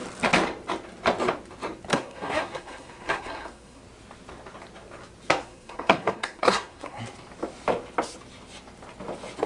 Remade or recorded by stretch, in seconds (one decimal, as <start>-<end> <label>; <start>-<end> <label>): 0.0-1.9 recorded; 1.9-3.8 remade; 3.8-5.4 recorded; 5.4-7.0 remade; 7.0-9.5 recorded